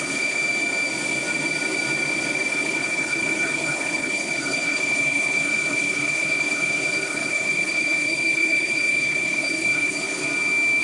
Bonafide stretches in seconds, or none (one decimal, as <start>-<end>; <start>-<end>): 0.4-2.5; 10.2-10.8